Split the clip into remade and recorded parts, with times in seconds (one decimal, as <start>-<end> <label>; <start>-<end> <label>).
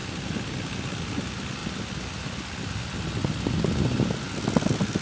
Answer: 0.0-5.0 recorded